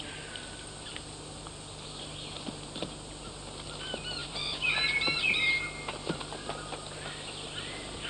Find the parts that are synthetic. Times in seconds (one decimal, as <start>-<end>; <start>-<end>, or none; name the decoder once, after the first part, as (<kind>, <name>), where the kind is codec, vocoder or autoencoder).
4.2-5.5 (vocoder, BigVGAN v2)